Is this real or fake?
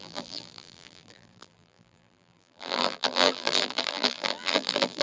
fake